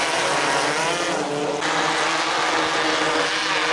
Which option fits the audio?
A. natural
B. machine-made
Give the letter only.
A